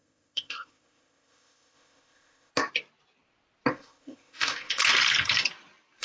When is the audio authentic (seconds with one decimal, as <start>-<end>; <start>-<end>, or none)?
2.5-3.7; 4.8-6.0